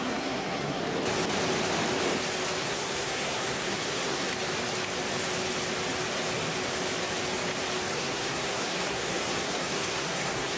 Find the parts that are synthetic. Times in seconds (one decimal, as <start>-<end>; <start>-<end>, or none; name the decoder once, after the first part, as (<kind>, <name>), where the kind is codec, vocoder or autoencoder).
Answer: 0.0-0.8 (codec, SNAC); 2.6-4.3; 7.9-10.6